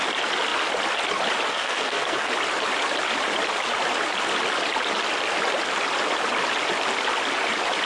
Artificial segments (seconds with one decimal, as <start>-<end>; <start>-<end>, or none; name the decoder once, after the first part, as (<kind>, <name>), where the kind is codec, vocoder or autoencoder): 1.5-2.3 (codec, SNAC)